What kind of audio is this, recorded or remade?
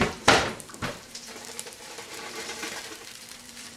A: remade